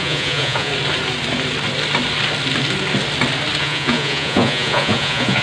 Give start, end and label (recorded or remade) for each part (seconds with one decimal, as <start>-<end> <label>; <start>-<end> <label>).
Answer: 0.0-0.7 remade; 0.7-3.6 recorded; 3.6-5.4 remade